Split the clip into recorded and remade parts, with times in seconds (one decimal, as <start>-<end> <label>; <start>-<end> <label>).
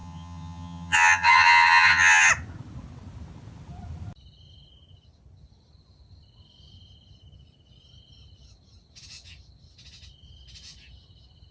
0.0-2.3 remade; 2.3-11.5 recorded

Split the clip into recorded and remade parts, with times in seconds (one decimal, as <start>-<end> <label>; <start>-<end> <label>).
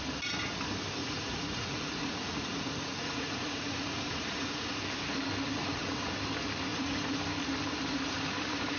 0.0-1.0 recorded; 1.0-4.8 remade; 4.8-5.6 recorded; 5.6-6.1 remade; 6.1-6.7 recorded; 6.7-7.2 remade; 7.2-8.8 recorded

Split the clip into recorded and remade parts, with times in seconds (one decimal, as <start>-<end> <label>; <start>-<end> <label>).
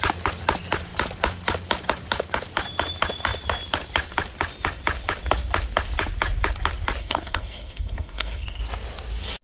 0.0-7.0 recorded; 7.0-8.6 remade; 8.6-9.4 recorded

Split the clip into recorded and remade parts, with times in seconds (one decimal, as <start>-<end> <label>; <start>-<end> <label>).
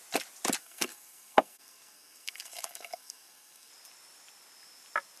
0.0-0.6 recorded; 0.6-3.7 remade; 3.7-5.2 recorded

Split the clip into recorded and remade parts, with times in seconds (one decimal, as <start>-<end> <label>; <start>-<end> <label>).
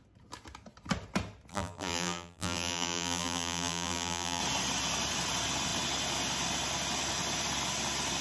0.0-1.5 recorded; 1.5-4.4 remade; 4.4-8.2 recorded